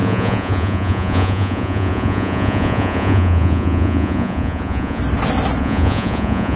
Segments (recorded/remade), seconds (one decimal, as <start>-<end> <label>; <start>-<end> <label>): 0.0-5.0 remade; 5.0-5.6 recorded; 5.6-6.6 remade